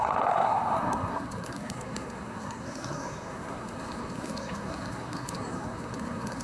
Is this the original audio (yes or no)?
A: no